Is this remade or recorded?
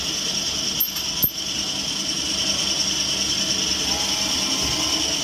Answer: recorded